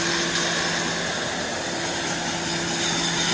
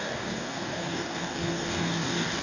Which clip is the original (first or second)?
first